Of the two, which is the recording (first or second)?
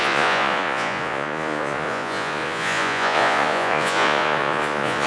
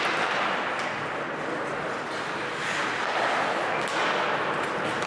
second